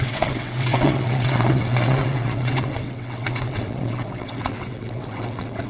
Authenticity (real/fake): fake